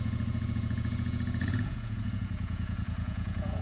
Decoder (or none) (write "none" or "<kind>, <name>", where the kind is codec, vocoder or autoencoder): vocoder, Vocos